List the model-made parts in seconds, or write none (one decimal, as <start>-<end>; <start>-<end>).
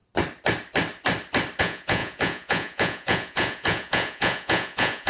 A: 1.6-5.1